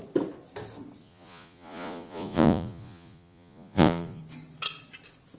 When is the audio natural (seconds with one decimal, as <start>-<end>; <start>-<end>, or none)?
0.0-1.0; 4.2-5.4